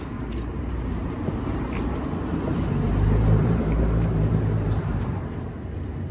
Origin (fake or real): fake